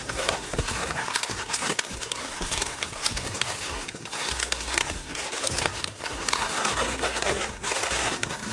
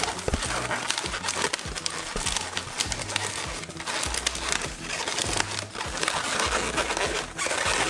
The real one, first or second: second